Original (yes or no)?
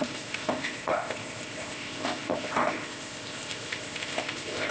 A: no